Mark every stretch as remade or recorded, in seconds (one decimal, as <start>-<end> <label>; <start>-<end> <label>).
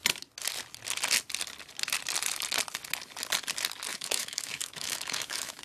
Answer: 0.0-3.9 recorded; 3.9-5.6 remade